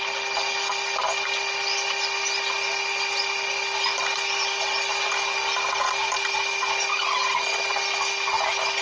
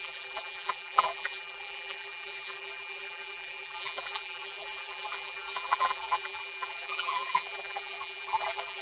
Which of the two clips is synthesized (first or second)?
second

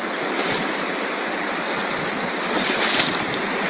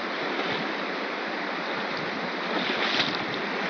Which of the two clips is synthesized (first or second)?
first